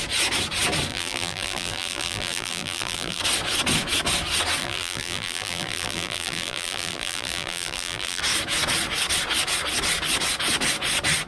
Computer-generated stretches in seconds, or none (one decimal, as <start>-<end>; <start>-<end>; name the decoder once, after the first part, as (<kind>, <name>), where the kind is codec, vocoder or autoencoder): 0.9-3.2 (vocoder, BigVGAN v2); 4.6-8.2